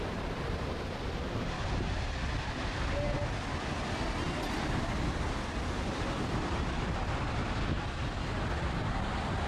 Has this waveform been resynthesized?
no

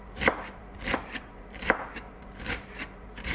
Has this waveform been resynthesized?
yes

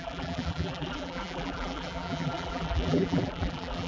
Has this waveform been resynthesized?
yes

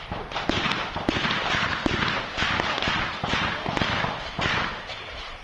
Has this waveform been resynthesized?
no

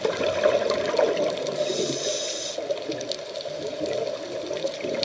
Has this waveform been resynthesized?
no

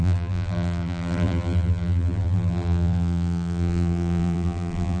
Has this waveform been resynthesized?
yes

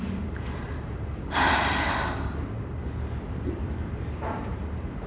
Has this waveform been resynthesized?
yes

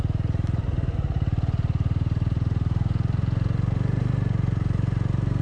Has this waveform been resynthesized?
yes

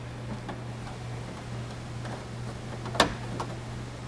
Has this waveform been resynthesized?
no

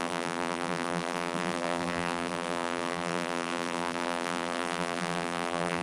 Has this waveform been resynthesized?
yes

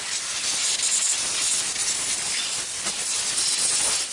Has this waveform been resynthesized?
no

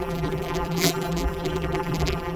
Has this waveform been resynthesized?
yes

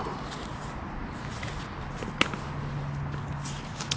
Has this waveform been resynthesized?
no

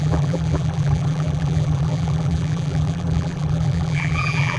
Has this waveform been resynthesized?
yes